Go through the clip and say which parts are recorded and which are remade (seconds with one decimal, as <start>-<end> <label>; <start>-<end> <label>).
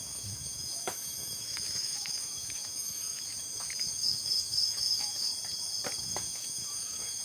0.0-5.3 remade; 5.3-6.0 recorded; 6.0-7.2 remade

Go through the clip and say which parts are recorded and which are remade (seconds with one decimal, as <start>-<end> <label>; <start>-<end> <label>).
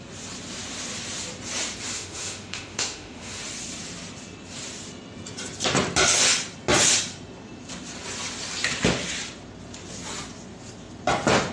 0.0-1.9 recorded; 1.9-3.4 remade; 3.4-11.5 recorded